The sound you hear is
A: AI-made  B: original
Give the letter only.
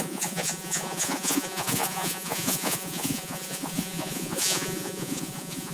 A